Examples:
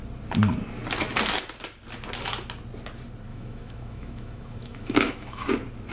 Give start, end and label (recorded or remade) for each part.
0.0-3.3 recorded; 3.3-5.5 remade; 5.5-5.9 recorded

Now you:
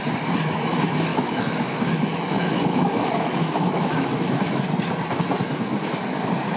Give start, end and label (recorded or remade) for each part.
0.0-1.1 recorded; 1.1-4.6 remade; 4.6-6.6 recorded

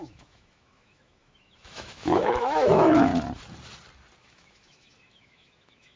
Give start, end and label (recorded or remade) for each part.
0.0-3.1 remade; 3.1-4.2 recorded; 4.2-6.0 remade

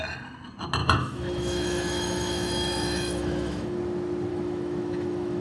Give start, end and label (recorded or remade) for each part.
0.0-0.8 recorded; 0.8-3.8 remade; 3.8-4.3 recorded; 4.3-5.4 remade